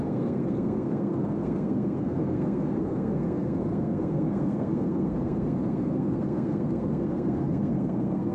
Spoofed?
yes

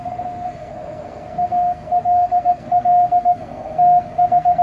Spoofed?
yes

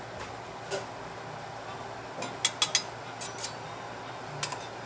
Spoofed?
no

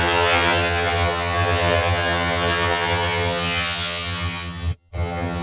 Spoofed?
yes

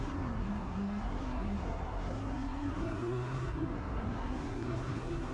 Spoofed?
yes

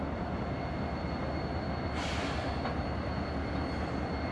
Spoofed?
no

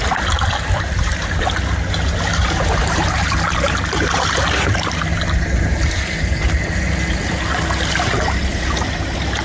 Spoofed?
no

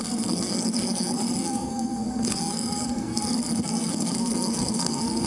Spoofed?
yes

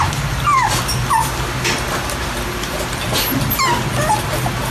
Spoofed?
no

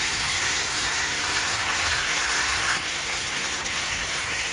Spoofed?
yes